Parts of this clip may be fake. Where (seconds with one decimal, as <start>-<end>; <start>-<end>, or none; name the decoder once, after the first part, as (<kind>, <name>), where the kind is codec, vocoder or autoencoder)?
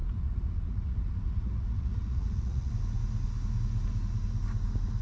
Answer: 0.0-2.7 (vocoder, Vocos)